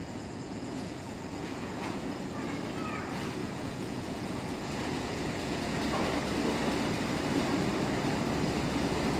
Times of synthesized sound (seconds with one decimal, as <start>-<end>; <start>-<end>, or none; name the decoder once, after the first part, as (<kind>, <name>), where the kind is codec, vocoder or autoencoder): 0.0-2.1 (vocoder, Vocos); 3.4-5.8